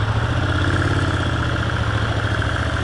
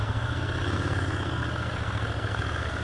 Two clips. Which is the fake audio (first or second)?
second